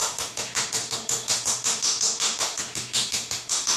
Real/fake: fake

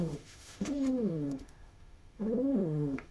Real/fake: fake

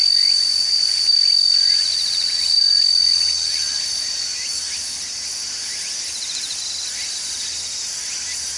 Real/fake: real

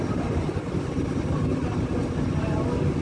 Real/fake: real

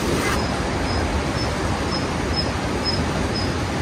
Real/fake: real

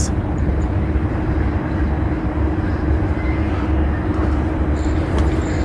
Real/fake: real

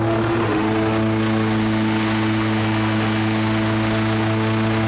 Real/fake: fake